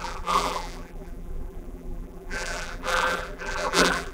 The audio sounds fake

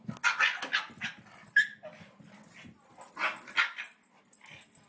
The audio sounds real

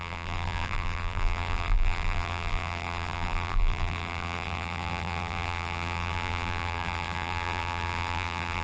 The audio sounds fake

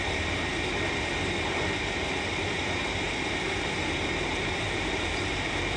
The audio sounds fake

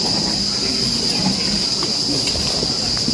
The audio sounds real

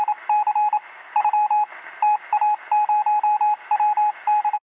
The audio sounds real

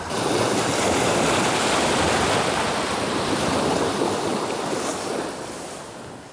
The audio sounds real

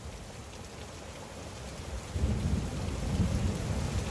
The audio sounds real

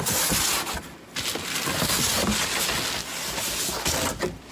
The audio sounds real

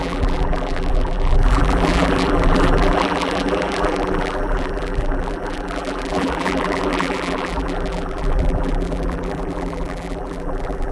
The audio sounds fake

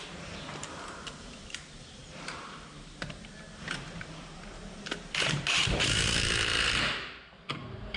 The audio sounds fake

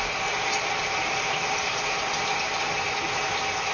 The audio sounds real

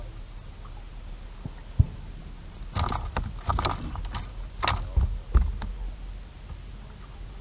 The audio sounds real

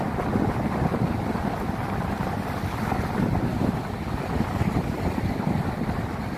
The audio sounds real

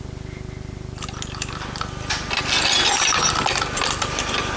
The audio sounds real